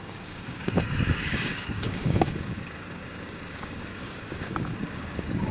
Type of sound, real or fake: fake